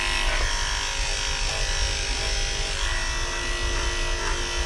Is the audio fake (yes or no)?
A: no